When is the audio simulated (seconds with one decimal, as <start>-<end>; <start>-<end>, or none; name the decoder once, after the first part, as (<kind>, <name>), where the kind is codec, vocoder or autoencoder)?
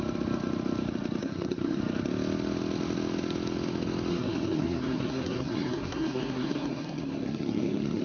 1.2-1.8 (codec, SNAC); 4.1-8.0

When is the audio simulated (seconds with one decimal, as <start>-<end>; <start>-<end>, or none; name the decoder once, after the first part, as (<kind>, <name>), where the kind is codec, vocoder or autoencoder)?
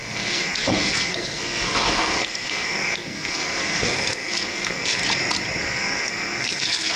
0.0-5.0 (codec, SNAC); 5.6-7.0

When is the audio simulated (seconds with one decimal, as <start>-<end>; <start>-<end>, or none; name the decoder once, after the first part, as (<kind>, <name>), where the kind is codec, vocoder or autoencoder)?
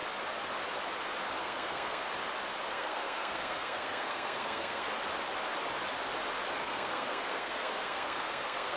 1.4-2.1 (codec, SNAC); 2.6-4.9; 6.5-8.8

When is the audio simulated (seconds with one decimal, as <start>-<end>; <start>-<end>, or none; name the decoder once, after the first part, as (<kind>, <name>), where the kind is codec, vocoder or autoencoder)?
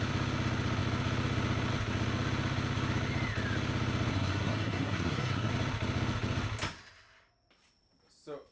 4.1-5.5 (codec, SNAC)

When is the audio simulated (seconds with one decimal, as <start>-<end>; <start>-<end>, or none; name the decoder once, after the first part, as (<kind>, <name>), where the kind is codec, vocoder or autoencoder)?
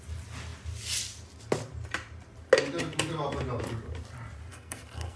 4.5-5.2 (codec, SNAC)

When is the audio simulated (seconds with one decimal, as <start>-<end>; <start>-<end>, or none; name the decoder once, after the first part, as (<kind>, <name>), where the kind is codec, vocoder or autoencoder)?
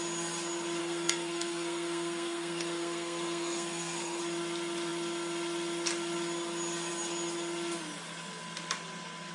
0.8-4.2 (codec, SNAC)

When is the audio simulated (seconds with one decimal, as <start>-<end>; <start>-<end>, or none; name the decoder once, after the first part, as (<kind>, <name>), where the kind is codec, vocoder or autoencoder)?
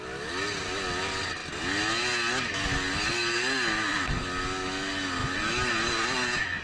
none